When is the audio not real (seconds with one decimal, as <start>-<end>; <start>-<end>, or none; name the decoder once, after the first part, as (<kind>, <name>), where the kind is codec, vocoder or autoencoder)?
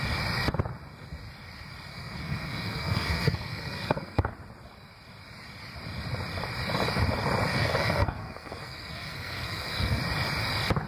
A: 1.9-4.3 (codec, SNAC); 7.5-10.0